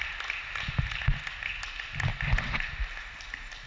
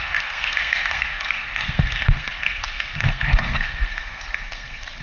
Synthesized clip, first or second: second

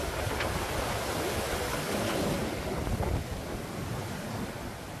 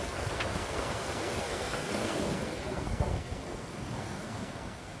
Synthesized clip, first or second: second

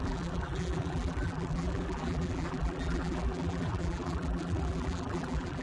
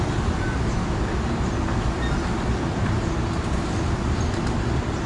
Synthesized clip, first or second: first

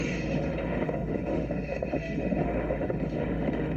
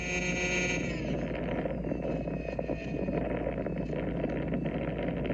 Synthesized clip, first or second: first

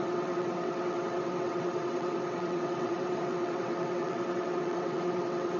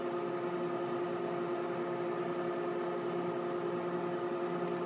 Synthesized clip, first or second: first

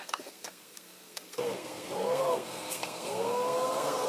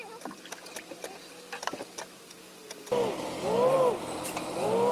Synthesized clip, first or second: first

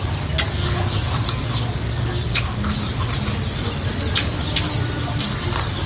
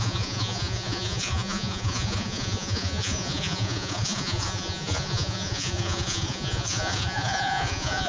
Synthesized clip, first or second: second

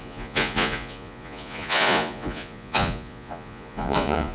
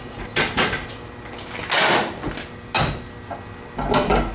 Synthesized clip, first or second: first